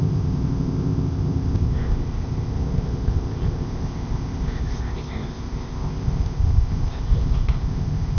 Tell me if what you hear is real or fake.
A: fake